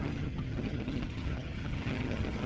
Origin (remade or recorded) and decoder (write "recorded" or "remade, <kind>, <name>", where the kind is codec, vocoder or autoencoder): remade, vocoder, HiFi-GAN